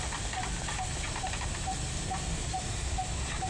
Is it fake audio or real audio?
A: real